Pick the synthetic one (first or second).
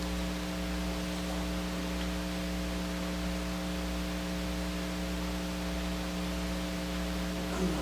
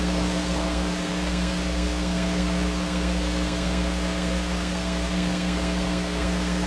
second